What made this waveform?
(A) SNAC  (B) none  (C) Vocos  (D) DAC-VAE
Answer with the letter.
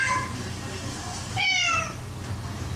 B